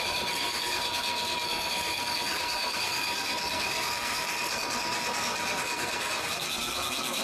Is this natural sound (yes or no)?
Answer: no